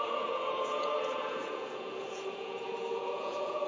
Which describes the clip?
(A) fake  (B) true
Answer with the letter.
A